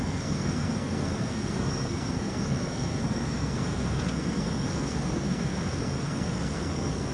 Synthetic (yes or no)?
yes